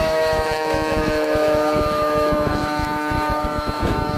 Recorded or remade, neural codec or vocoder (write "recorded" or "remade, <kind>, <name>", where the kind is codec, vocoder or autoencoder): remade, autoencoder, DAC-VAE